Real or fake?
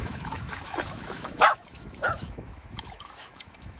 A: fake